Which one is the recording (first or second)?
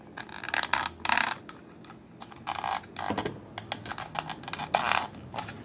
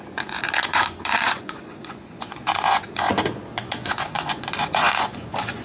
first